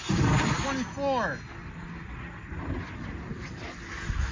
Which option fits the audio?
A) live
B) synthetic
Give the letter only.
A